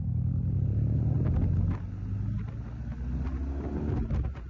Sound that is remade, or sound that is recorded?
recorded